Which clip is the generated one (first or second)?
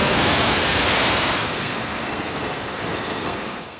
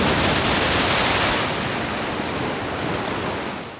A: first